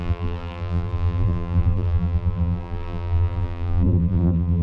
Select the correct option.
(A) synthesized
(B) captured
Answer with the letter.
A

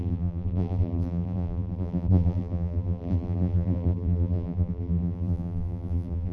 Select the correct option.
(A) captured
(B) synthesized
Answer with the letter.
B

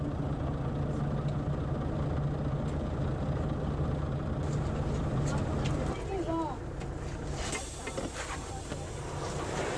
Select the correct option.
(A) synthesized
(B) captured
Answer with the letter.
B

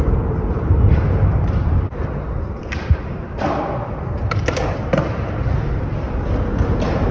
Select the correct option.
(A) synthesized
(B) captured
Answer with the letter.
A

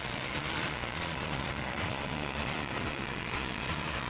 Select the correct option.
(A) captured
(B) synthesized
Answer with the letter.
B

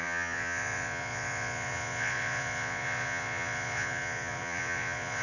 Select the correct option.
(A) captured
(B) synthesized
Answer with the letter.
B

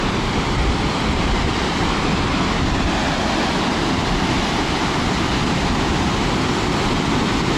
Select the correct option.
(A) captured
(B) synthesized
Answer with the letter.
A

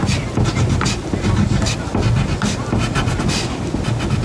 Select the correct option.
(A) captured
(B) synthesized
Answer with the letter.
A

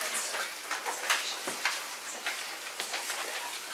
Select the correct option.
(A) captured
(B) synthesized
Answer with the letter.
A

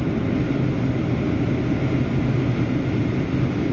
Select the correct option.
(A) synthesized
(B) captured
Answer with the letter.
B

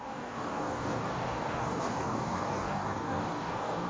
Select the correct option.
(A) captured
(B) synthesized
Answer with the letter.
B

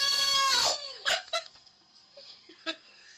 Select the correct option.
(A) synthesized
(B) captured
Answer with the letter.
A